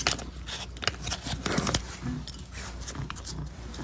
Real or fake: real